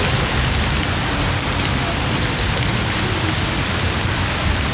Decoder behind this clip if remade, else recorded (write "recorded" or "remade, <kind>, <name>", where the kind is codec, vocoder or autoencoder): recorded